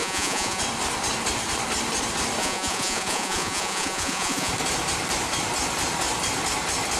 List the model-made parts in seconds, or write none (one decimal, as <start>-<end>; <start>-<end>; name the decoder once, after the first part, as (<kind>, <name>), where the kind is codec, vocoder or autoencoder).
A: 0.0-0.6 (vocoder, Vocos); 2.4-4.5